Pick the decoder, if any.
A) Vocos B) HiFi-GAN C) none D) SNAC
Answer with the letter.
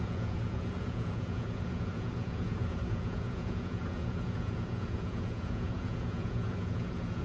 A